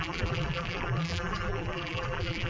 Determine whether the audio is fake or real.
fake